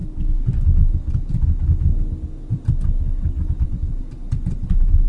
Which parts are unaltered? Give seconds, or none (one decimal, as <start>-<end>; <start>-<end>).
0.0-5.1